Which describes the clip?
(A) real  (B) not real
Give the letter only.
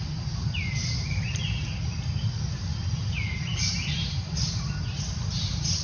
A